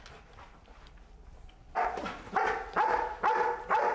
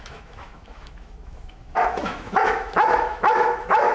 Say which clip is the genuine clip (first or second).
first